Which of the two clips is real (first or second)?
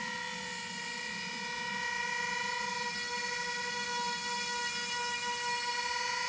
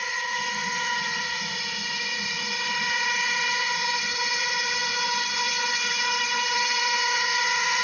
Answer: first